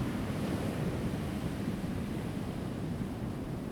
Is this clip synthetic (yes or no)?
yes